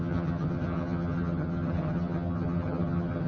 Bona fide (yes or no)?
no